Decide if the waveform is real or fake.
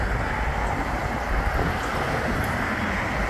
real